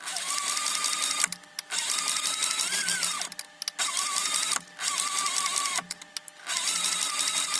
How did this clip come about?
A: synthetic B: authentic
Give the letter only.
B